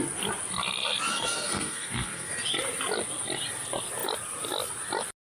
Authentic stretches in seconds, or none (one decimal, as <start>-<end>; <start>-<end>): 0.0-1.1; 2.3-5.3